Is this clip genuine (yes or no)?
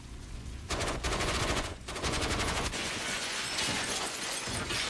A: no